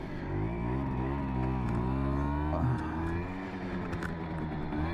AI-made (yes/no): no